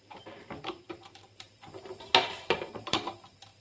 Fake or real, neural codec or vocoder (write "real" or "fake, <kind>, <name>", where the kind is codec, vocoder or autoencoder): fake, vocoder, BigVGAN v2